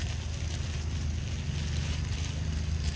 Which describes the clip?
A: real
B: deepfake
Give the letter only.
A